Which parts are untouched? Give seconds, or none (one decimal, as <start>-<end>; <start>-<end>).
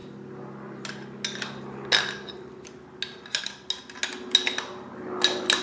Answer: 0.0-5.6